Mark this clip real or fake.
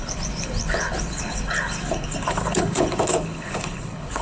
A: fake